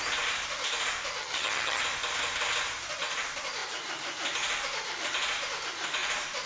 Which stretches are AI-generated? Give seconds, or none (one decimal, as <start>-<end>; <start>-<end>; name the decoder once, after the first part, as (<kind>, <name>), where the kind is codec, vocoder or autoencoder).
1.2-1.8 (vocoder, HiFi-GAN)